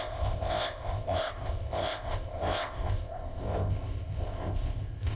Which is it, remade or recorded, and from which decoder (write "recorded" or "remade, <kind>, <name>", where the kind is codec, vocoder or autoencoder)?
remade, codec, ZipCodec